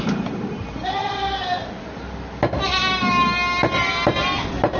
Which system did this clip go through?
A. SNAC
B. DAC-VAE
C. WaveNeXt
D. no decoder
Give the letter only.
D